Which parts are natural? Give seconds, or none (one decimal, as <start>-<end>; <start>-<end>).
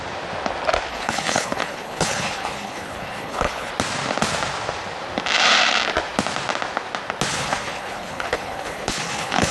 0.0-0.9; 3.7-7.3